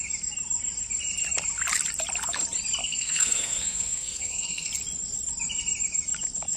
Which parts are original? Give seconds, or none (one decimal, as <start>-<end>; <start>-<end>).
0.0-2.8; 4.7-6.6